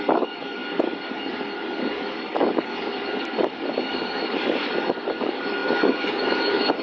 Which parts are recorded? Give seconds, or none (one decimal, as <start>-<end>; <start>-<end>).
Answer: none